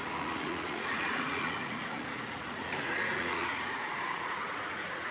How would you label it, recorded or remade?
remade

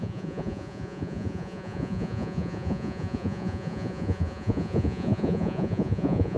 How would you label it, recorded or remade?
remade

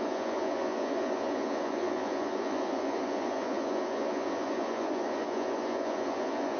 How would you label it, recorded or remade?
remade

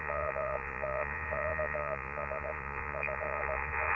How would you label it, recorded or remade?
remade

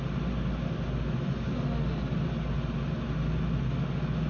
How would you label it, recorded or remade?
recorded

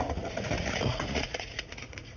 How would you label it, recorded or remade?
remade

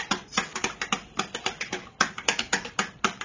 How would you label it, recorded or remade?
recorded